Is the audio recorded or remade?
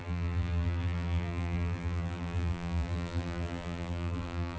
remade